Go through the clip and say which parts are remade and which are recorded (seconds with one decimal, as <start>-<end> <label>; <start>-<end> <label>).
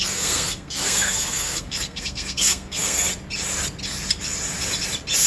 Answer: 0.0-3.1 remade; 3.1-5.3 recorded